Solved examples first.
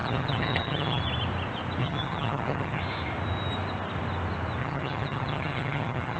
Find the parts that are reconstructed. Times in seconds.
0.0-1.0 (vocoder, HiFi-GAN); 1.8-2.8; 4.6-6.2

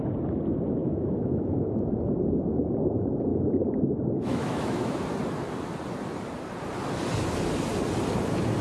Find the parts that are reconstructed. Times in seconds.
0.8-2.1 (autoencoder, DAC-VAE); 3.3-5.0

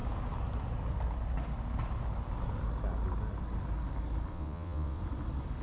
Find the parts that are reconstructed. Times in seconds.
4.3-5.0 (vocoder, WaveNeXt)

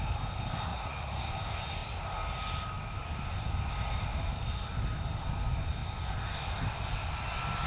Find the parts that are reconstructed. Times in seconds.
0.7-1.3 (vocoder, Vocos)

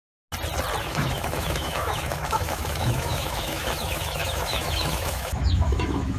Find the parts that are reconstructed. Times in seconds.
0.8-6.2 (autoencoder, DAC-VAE)

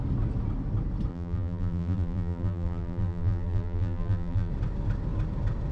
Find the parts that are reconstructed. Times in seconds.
1.1-4.5 (vocoder, BigVGAN v2)

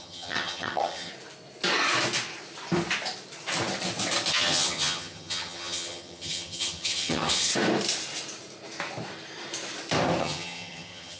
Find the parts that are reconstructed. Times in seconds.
0.0-1.1 (vocoder, HiFi-GAN); 4.3-7.5; 10.2-11.2